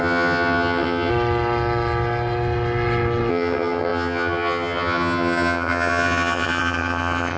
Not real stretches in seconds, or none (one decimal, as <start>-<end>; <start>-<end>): 0.0-1.1; 3.3-7.4